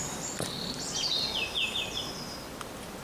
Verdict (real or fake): real